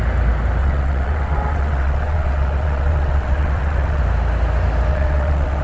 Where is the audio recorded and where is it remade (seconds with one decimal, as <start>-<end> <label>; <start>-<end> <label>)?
0.0-0.6 recorded; 0.6-4.0 remade; 4.0-4.9 recorded; 4.9-5.6 remade